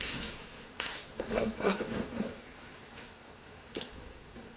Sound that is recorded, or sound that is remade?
remade